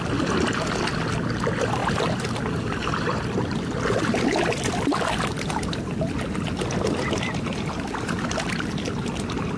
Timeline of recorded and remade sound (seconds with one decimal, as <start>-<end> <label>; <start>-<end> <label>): 0.0-9.6 recorded